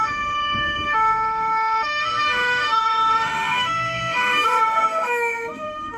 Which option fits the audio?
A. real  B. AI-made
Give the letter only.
B